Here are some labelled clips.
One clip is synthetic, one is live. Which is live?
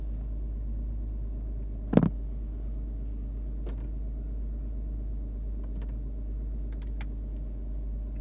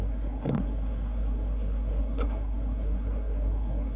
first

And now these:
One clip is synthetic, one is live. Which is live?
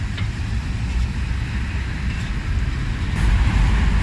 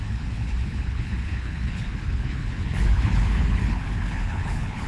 first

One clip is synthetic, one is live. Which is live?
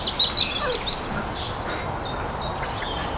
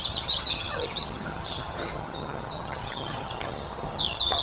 first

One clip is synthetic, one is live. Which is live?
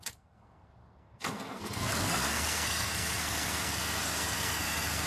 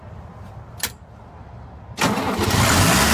second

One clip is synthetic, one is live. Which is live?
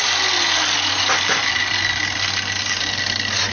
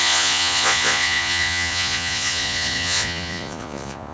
first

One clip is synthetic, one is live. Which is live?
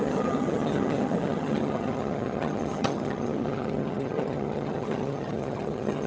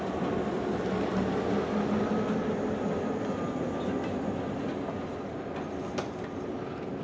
second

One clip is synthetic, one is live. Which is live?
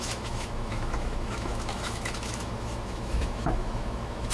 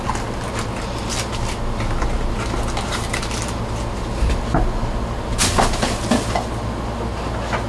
second